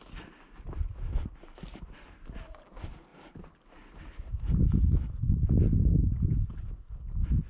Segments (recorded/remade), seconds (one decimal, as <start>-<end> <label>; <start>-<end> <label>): 0.0-3.1 recorded; 3.1-5.1 remade; 5.1-7.5 recorded